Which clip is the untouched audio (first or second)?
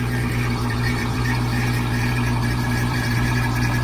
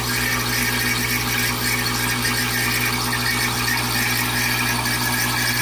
second